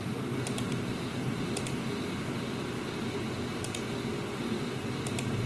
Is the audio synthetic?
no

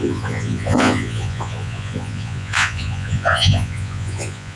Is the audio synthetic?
yes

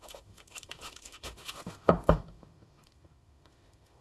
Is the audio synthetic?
yes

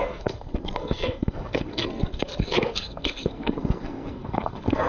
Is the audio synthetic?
yes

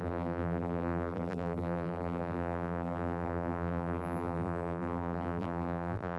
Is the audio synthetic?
yes